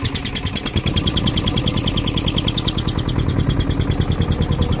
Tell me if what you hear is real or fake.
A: real